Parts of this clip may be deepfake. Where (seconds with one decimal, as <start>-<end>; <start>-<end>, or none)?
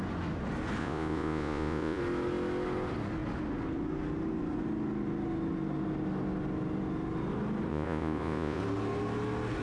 0.8-2.0; 7.7-8.6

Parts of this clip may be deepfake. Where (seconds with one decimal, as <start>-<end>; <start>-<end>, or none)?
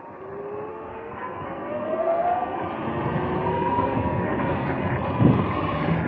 0.7-2.6; 3.5-4.9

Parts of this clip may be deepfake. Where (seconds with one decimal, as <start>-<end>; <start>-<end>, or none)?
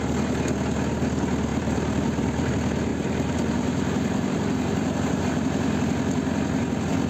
1.5-2.5; 2.9-5.2